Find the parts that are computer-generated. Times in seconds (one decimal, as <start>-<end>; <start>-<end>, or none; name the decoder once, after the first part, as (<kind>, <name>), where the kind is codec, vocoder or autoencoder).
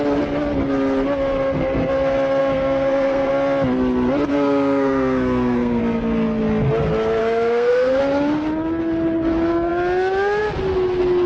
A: 2.4-3.3 (codec, SNAC); 4.3-5.8; 7.2-8.0